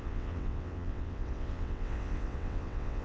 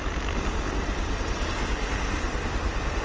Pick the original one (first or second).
second